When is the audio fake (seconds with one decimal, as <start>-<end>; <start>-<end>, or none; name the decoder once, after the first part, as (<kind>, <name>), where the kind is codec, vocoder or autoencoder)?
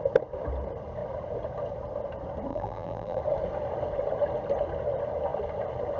2.5-3.2 (vocoder, BigVGAN v2)